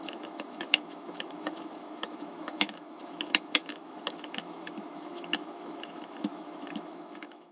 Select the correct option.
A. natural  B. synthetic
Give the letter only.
B